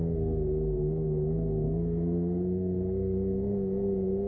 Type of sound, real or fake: fake